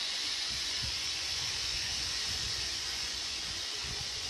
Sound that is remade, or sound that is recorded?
remade